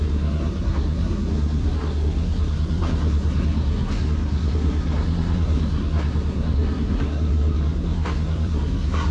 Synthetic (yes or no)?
yes